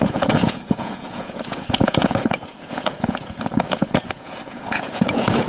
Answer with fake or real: fake